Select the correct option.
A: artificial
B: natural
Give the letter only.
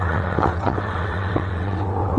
A